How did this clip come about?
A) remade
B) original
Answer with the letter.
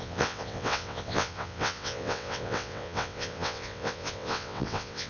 A